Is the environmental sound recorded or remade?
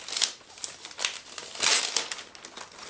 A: recorded